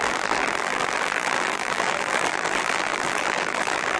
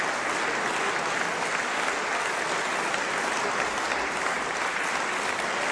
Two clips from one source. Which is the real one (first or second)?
second